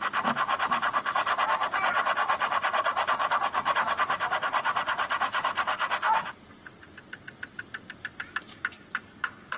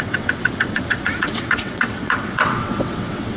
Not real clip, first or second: second